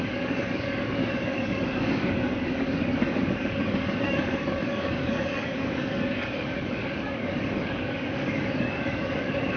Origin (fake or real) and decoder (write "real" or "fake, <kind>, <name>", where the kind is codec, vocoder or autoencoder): fake, codec, DAC